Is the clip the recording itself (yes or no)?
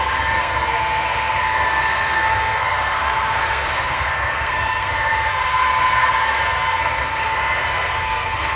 no